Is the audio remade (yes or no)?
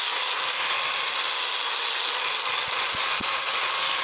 no